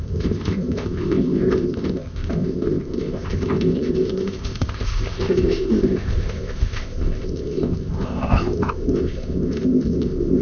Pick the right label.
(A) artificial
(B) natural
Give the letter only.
A